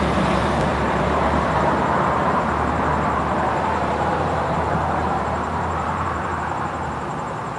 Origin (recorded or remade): remade